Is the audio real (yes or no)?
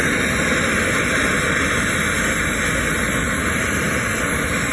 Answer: yes